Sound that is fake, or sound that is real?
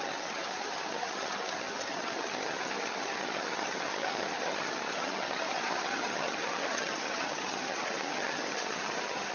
fake